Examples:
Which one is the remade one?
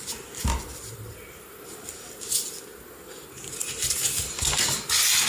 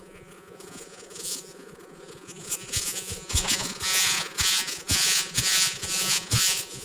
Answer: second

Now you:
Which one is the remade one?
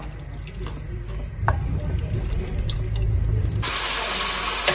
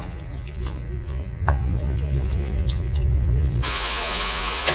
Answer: second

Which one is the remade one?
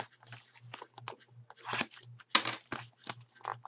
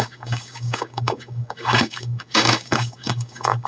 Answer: second